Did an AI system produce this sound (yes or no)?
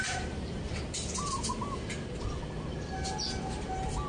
no